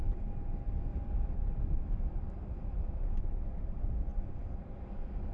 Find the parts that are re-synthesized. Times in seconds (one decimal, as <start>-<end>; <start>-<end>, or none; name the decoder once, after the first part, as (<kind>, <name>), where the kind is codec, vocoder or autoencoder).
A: none